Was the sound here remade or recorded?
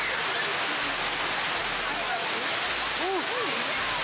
recorded